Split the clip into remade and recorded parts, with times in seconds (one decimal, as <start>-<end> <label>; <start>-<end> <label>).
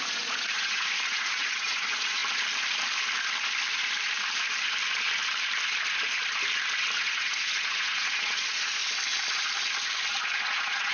0.0-2.2 remade; 2.2-7.0 recorded; 7.0-8.8 remade; 8.8-10.1 recorded; 10.1-10.9 remade